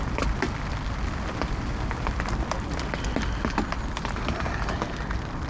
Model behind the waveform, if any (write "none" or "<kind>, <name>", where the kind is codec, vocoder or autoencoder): none